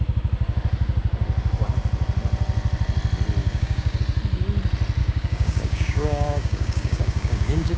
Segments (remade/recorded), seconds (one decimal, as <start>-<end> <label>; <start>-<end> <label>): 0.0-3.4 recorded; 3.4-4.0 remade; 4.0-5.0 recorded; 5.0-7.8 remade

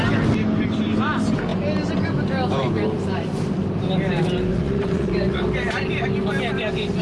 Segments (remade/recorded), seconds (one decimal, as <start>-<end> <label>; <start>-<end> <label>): 0.0-4.5 recorded; 4.5-5.4 remade; 5.4-7.0 recorded

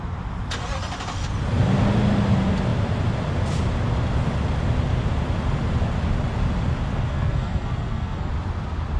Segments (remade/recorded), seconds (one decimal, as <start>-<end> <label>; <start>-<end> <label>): 0.0-6.9 recorded; 6.9-8.3 remade; 8.3-9.0 recorded

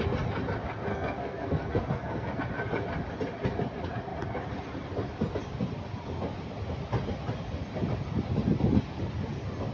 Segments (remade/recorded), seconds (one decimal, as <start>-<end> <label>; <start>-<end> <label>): 0.0-0.9 recorded; 0.9-2.4 remade; 2.4-9.7 recorded

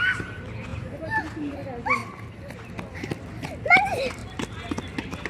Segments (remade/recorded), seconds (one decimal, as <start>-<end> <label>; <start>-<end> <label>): 0.0-0.7 recorded; 0.7-1.2 remade; 1.2-5.3 recorded